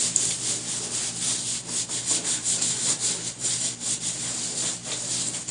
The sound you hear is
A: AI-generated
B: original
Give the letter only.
B